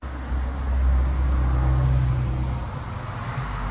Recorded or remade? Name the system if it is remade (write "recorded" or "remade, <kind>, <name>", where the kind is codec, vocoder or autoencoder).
recorded